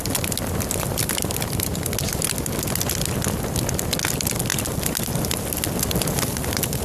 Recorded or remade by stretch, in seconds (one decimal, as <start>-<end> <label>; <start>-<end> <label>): 0.0-6.8 recorded

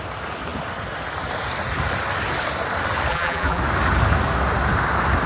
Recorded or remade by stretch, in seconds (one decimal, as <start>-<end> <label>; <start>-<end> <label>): 0.0-3.1 recorded; 3.1-3.6 remade; 3.6-5.3 recorded